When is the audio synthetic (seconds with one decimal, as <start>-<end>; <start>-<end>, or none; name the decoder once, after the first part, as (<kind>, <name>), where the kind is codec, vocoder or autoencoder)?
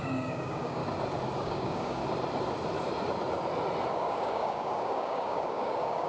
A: 0.0-0.8 (codec, DAC); 1.4-2.0; 3.9-6.1